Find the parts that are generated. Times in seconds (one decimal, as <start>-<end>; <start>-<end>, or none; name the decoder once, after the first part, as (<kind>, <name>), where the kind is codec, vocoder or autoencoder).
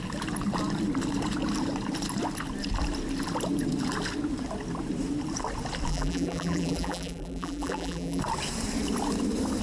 5.9-8.2 (vocoder, BigVGAN v2)